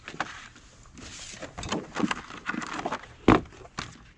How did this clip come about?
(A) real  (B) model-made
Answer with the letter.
A